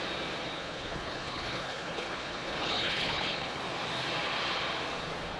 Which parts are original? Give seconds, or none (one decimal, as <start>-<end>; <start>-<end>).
0.0-0.5; 3.6-5.4